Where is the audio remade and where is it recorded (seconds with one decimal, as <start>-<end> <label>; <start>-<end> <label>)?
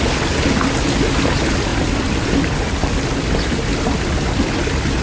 0.0-5.0 recorded